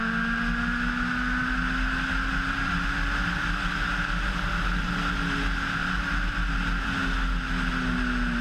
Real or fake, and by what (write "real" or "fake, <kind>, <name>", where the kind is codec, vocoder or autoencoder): real